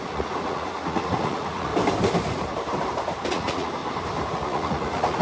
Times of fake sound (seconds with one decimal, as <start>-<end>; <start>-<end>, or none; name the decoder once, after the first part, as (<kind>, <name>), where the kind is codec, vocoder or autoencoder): 0.0-1.7 (vocoder, Vocos); 3.3-3.8; 4.3-5.2